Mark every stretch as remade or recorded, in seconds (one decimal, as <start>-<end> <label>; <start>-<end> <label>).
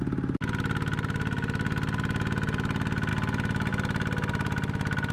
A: 0.0-5.1 recorded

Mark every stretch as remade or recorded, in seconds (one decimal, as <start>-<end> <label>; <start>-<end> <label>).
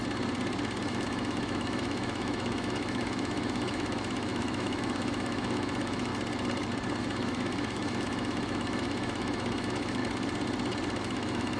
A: 0.0-0.8 recorded; 0.8-6.1 remade; 6.1-7.0 recorded; 7.0-10.0 remade; 10.0-11.0 recorded; 11.0-11.6 remade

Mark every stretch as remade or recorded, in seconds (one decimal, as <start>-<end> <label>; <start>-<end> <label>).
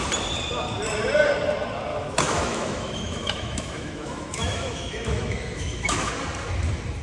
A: 0.0-1.9 recorded; 1.9-6.1 remade; 6.1-7.0 recorded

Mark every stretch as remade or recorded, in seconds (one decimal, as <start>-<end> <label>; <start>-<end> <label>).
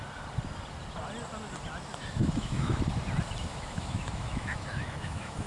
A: 0.0-2.2 recorded; 2.2-2.8 remade; 2.8-3.5 recorded; 3.5-5.5 remade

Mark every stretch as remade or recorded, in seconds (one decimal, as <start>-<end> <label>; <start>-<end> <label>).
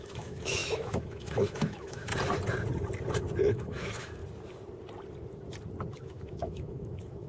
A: 0.0-2.1 remade; 2.1-3.4 recorded; 3.4-4.2 remade; 4.2-5.9 recorded; 5.9-7.3 remade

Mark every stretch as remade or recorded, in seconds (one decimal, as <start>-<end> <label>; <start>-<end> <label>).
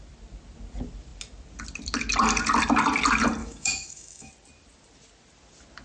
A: 0.0-3.4 recorded; 3.4-4.3 remade; 4.3-5.8 recorded